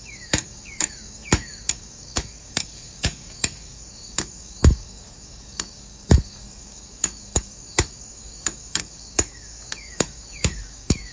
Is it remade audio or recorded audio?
remade